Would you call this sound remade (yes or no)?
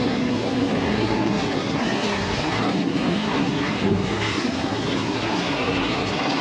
yes